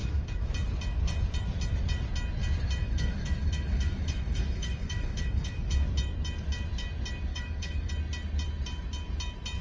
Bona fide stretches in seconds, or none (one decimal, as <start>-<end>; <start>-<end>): 0.5-2.8; 5.6-7.3; 7.9-9.6